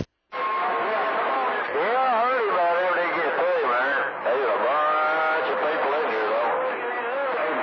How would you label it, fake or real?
real